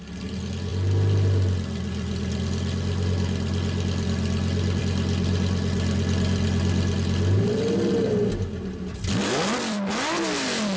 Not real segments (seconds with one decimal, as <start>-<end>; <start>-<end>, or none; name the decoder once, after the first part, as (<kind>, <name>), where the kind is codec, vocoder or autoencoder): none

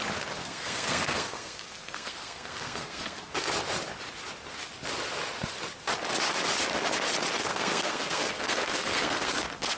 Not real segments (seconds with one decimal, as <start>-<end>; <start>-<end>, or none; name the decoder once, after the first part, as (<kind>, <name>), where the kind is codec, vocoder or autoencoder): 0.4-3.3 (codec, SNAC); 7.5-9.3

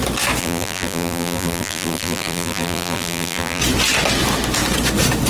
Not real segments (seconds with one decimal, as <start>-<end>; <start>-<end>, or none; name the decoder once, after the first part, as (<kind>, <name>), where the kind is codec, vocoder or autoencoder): 0.4-3.6 (vocoder, BigVGAN v2)

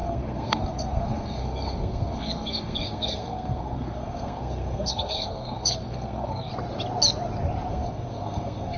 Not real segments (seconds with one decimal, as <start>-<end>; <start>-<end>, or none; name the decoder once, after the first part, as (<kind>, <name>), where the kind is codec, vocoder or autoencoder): 0.0-6.5 (codec, SNAC); 7.7-8.8

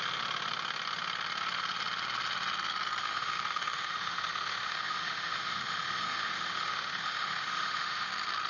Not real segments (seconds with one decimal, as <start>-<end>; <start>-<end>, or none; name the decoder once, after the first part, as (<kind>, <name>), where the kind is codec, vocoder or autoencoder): 3.0-8.1 (autoencoder, DAC-VAE)